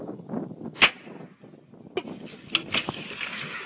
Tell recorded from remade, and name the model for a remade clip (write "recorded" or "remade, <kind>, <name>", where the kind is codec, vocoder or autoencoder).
recorded